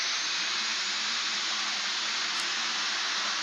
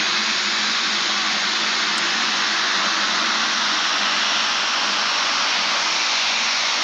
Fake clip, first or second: second